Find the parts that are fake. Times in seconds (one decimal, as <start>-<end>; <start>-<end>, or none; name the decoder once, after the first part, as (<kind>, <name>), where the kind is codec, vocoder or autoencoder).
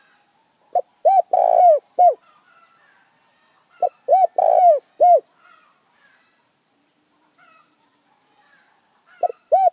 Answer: 0.0-4.1 (vocoder, BigVGAN v2); 5.9-9.7